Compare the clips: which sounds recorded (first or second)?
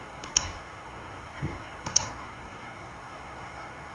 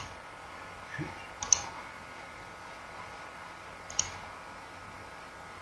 second